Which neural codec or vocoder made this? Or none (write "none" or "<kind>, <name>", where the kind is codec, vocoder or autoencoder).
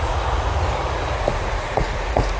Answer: vocoder, Vocos